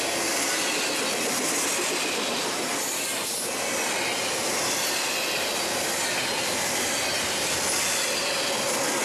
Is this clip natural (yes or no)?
yes